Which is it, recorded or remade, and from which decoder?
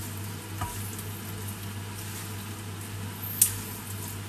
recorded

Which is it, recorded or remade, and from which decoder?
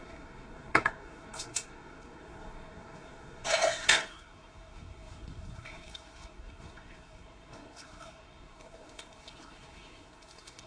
remade, codec, SNAC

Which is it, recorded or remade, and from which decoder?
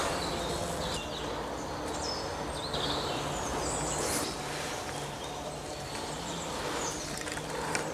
recorded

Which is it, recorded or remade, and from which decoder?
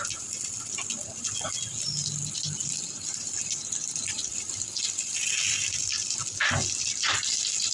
recorded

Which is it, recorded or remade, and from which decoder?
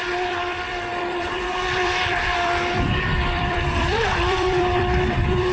remade, vocoder, BigVGAN v2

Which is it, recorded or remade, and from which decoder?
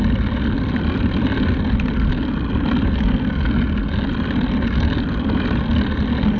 recorded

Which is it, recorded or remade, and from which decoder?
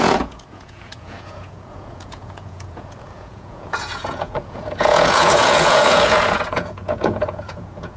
remade, vocoder, Vocos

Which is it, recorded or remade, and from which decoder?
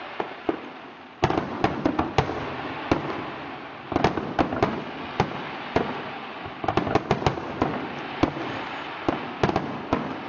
recorded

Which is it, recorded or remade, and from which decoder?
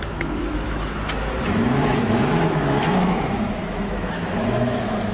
remade, autoencoder, DAC-VAE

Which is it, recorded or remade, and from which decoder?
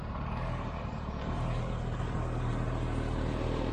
remade, vocoder, BigVGAN v2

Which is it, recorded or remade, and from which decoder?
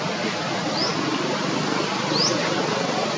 recorded